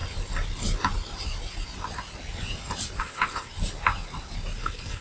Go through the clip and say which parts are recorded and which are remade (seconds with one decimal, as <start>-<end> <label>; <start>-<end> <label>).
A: 0.0-3.0 recorded; 3.0-3.5 remade; 3.5-4.6 recorded; 4.6-5.0 remade